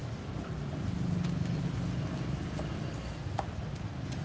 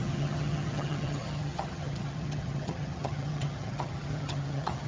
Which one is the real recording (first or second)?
first